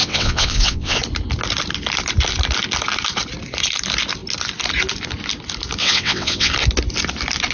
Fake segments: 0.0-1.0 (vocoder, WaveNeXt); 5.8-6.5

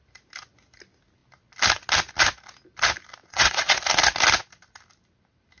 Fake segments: 3.2-3.8 (vocoder, WaveNeXt)

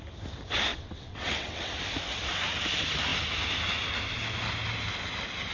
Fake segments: 0.7-1.7 (vocoder, WaveNeXt)

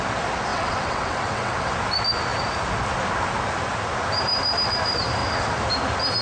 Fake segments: 0.5-1.7 (vocoder, WaveNeXt)

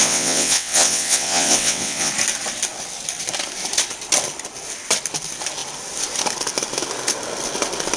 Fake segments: 0.0-2.1 (vocoder, WaveNeXt)

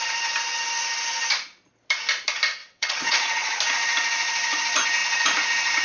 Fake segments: 2.6-3.5 (vocoder, WaveNeXt)

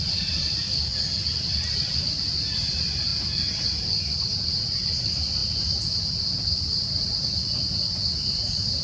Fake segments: none

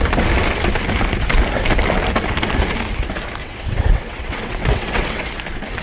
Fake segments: 3.4-5.3 (vocoder, WaveNeXt)